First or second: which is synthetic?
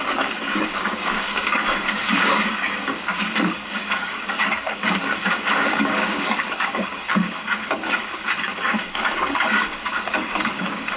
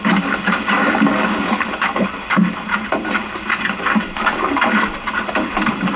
first